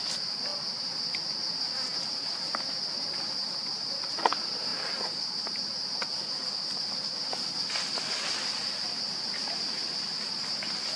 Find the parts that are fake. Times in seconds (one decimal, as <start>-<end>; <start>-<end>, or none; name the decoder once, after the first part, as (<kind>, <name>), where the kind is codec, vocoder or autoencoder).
none